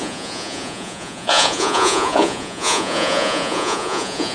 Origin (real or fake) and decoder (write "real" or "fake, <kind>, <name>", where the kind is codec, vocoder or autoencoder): fake, vocoder, Vocos